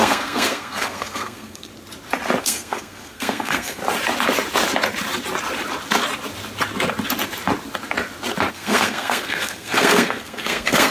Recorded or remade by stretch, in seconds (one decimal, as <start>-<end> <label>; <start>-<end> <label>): 0.0-1.7 remade; 1.7-2.4 recorded; 2.4-3.8 remade; 3.8-8.5 recorded; 8.5-10.9 remade